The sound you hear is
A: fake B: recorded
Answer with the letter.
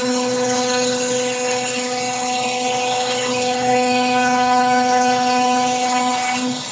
A